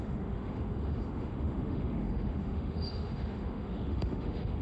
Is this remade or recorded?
remade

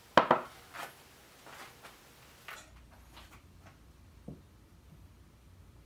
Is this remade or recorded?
recorded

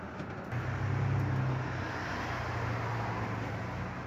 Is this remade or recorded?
recorded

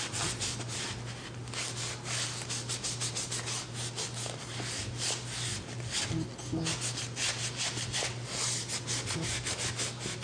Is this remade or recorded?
recorded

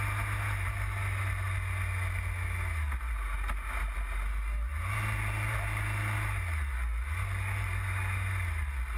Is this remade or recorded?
recorded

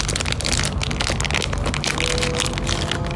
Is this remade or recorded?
recorded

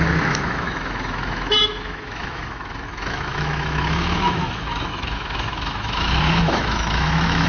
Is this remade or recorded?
remade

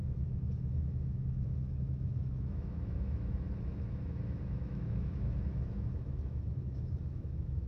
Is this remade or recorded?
remade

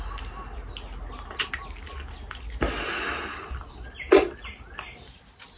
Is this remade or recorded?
recorded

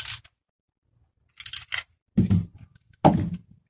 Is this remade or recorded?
recorded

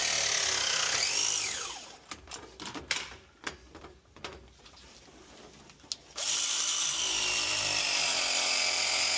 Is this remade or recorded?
recorded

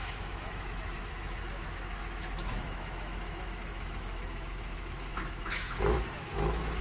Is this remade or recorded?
remade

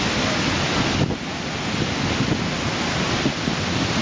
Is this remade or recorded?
recorded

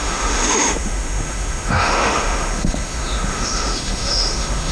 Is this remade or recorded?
remade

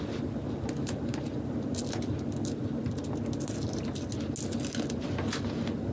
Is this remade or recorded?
recorded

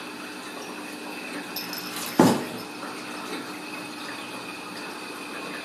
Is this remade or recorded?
recorded